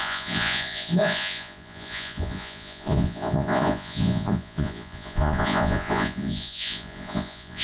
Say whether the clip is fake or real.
fake